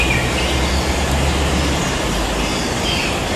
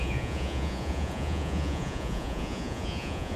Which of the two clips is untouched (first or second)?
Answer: first